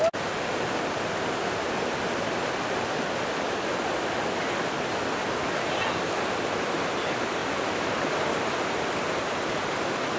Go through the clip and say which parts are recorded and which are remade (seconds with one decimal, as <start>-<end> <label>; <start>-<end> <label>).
0.0-10.2 recorded

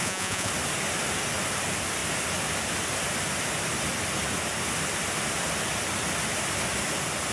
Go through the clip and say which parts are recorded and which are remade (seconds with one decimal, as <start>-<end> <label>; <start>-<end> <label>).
0.0-0.5 remade; 0.5-7.3 recorded

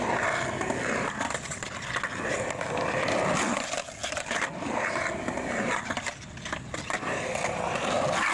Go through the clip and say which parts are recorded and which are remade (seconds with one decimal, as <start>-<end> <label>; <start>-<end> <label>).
0.0-4.0 recorded; 4.0-5.1 remade; 5.1-8.3 recorded

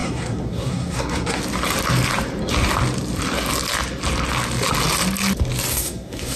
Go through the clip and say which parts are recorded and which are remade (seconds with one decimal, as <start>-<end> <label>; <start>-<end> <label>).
0.0-1.4 remade; 1.4-5.7 recorded; 5.7-6.4 remade

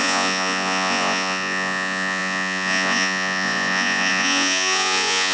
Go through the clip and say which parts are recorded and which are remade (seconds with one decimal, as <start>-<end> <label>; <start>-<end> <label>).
0.0-5.3 remade

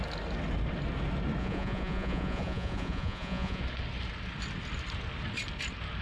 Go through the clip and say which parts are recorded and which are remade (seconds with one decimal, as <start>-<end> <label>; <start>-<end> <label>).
0.0-1.4 recorded; 1.4-3.6 remade; 3.6-6.0 recorded